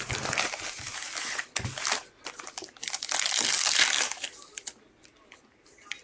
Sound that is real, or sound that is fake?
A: real